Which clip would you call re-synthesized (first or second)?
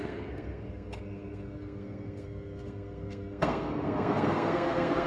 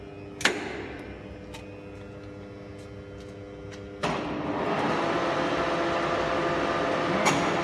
first